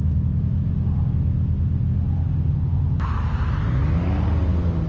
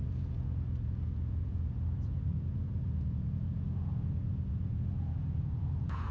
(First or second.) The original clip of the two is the first